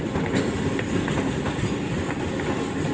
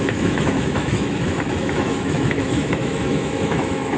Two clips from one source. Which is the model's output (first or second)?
second